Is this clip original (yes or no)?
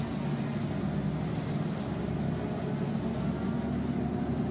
yes